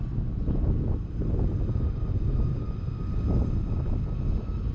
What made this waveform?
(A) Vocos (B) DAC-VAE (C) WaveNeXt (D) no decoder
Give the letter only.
D